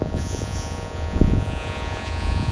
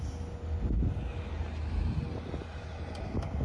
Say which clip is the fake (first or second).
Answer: first